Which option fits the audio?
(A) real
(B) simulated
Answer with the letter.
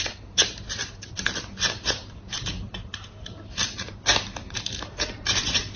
B